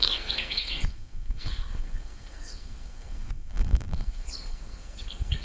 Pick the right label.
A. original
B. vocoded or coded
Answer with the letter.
B